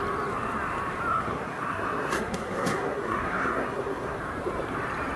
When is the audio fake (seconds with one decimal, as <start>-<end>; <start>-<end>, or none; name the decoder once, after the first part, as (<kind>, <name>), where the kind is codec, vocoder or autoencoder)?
1.1-4.2 (codec, SNAC)